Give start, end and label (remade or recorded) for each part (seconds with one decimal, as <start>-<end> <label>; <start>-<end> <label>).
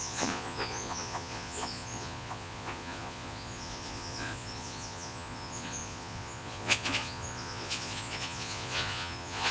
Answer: 0.0-9.5 remade